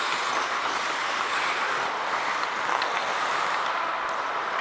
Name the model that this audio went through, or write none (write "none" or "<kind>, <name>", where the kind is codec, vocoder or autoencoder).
none